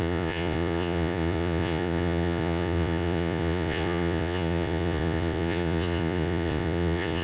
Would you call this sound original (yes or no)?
no